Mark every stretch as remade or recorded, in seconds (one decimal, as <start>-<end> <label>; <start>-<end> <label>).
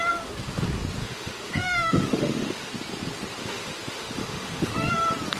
0.0-1.0 recorded; 1.0-2.7 remade; 2.7-3.4 recorded; 3.4-4.9 remade; 4.9-5.4 recorded